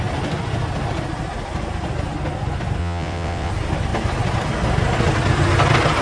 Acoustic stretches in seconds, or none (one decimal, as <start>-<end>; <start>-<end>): 0.0-2.8; 3.5-6.0